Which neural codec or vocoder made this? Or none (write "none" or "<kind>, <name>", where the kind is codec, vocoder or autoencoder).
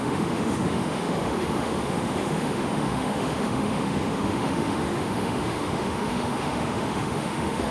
autoencoder, DAC-VAE